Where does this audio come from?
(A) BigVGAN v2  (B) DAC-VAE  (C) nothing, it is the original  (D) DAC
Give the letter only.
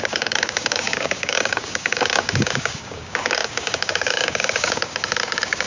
D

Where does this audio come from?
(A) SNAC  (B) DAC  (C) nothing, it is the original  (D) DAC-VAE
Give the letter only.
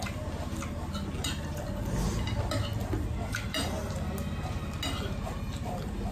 C